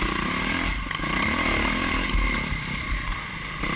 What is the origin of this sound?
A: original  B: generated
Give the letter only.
A